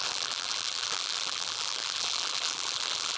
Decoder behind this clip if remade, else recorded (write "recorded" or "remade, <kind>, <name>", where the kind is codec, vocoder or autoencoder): remade, vocoder, BigVGAN v2